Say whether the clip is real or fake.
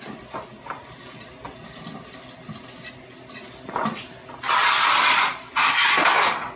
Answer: real